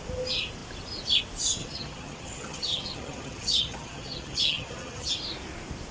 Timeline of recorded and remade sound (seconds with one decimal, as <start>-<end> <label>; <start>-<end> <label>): 0.0-1.6 recorded; 1.6-5.1 remade; 5.1-5.9 recorded